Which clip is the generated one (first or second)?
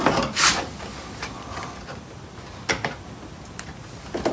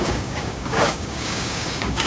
second